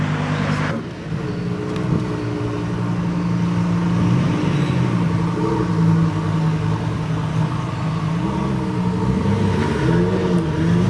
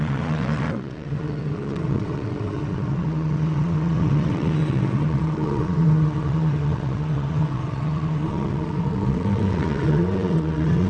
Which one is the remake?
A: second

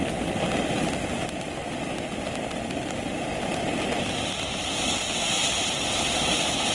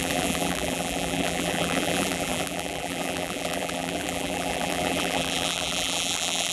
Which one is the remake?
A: second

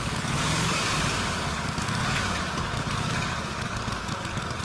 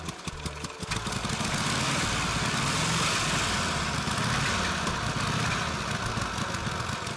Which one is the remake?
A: first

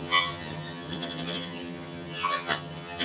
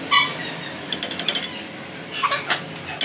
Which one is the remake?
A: first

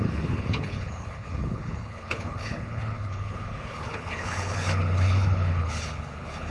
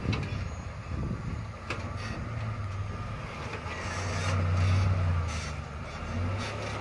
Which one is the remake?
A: first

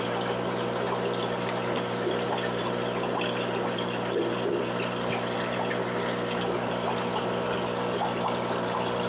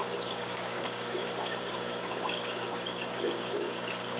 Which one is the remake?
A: second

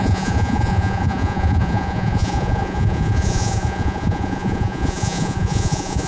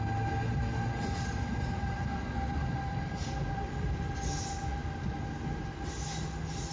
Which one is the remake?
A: first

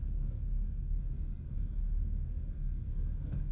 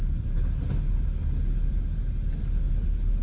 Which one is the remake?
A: first